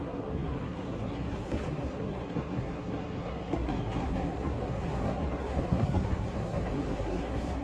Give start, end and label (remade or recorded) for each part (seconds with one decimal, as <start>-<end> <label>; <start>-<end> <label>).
0.0-7.6 remade